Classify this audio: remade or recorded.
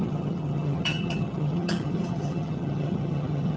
remade